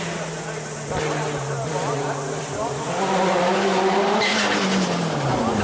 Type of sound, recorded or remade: recorded